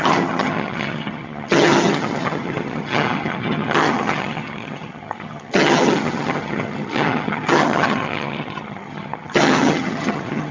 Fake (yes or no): yes